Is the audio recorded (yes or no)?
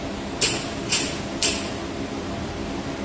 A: yes